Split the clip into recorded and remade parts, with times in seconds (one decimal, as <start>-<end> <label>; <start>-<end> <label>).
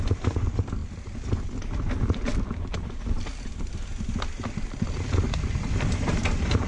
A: 0.0-6.7 recorded